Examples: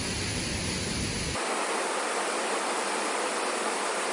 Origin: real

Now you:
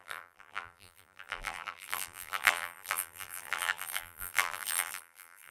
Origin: fake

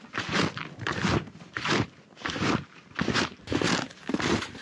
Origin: real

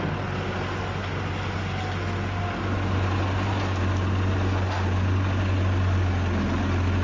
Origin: real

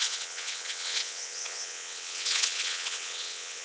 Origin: fake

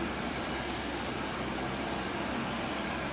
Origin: fake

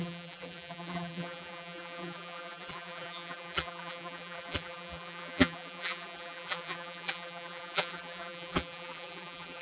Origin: fake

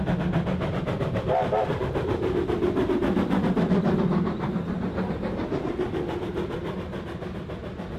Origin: real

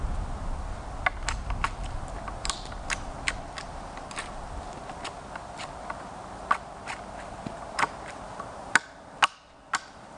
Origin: real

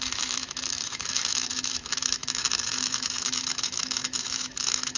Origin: fake